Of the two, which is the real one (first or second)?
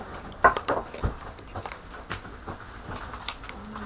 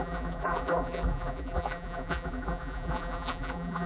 first